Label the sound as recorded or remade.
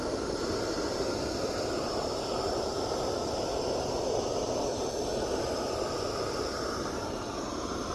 recorded